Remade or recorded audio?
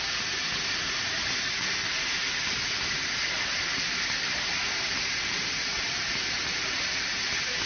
recorded